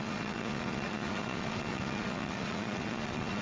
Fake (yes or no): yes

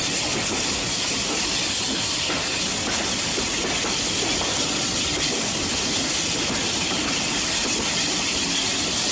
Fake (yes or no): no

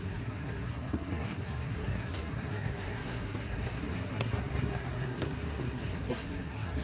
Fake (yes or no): yes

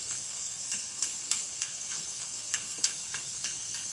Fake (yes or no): yes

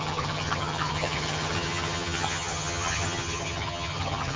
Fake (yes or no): yes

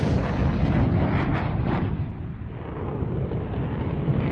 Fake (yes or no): no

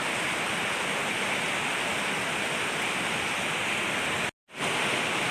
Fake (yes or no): no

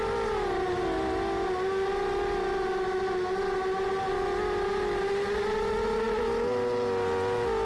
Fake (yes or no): no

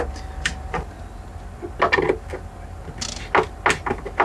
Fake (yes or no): no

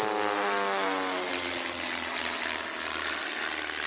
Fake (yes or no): no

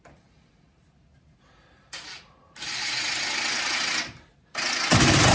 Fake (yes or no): no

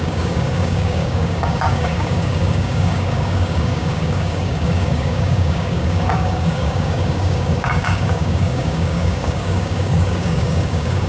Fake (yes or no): yes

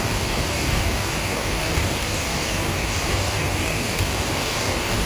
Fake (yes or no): yes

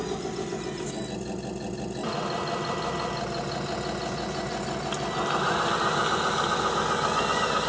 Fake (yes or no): no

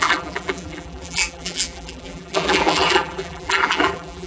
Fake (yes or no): yes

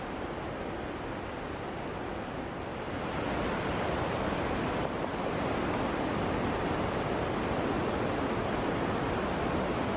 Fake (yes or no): no